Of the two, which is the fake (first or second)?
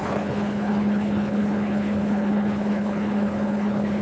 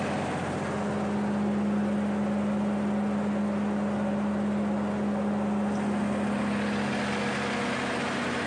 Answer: first